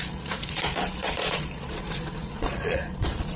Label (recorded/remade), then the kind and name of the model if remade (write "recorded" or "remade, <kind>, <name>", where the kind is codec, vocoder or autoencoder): remade, vocoder, Vocos